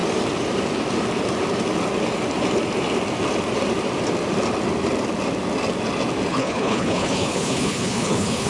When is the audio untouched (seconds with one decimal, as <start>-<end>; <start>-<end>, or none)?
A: 0.0-6.3